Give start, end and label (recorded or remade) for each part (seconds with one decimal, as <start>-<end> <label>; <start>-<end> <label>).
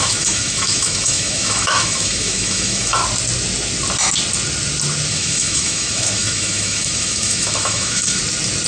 0.0-3.0 remade; 3.0-5.1 recorded; 5.1-8.2 remade; 8.2-8.7 recorded